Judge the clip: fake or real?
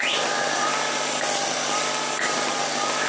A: real